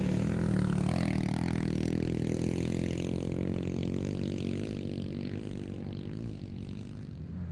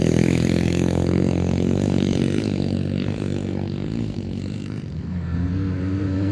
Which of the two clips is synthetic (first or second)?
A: second